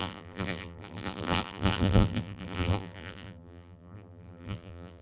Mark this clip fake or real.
fake